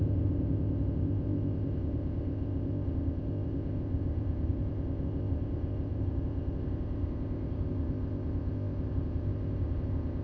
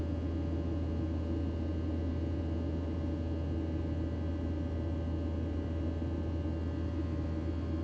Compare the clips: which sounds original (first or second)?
second